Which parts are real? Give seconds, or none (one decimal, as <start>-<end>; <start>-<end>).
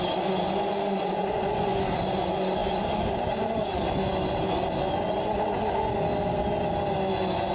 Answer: 0.0-0.9; 1.8-7.5